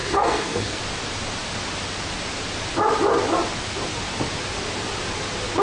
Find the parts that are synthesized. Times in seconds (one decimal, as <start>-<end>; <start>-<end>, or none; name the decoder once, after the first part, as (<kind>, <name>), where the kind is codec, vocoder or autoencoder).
0.0-0.8 (codec, SNAC)